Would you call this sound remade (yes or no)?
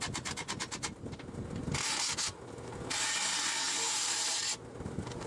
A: no